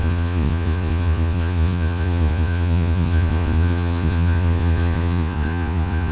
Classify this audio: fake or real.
fake